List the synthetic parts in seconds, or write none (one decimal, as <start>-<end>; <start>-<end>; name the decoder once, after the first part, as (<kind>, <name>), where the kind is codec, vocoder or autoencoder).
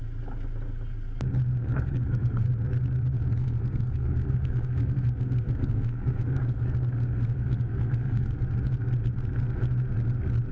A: 1.6-2.5 (codec, SNAC); 3.4-8.3